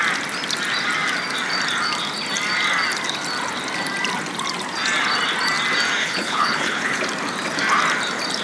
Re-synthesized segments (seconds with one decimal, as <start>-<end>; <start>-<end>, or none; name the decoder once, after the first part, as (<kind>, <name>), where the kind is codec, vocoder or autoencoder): 6.0-7.0 (codec, HILCodec)